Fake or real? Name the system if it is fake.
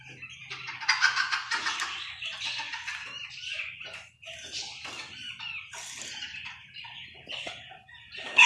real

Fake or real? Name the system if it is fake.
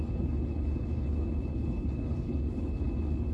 fake, codec, HILCodec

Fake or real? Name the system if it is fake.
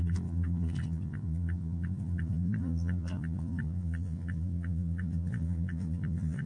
fake, vocoder, Vocos